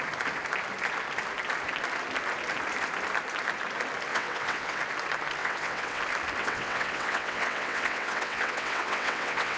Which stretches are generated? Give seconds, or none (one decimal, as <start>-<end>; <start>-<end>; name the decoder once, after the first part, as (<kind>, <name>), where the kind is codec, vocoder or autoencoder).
4.1-4.8 (vocoder, WaveNeXt); 5.4-6.0; 6.4-9.6